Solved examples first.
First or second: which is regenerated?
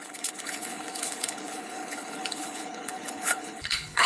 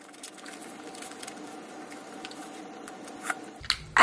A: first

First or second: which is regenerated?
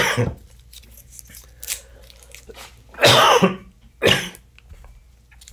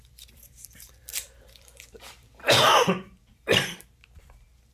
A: second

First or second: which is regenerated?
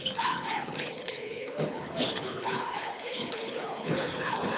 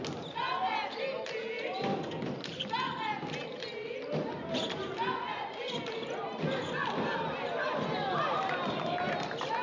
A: first